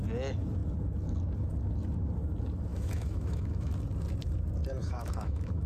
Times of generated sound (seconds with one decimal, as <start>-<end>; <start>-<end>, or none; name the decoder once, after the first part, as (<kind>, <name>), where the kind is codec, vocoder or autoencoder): 2.7-3.7 (autoencoder, DAC-VAE); 4.8-5.7